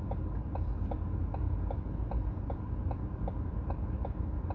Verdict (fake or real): real